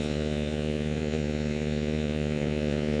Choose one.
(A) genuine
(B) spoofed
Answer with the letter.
B